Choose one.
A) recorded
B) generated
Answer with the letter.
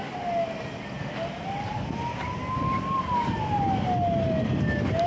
A